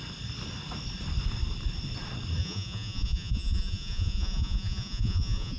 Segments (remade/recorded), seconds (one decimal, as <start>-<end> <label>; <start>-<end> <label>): 0.0-2.4 recorded; 2.4-5.6 remade